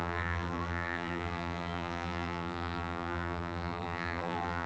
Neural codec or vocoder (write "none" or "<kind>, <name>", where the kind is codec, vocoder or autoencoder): vocoder, BigVGAN v2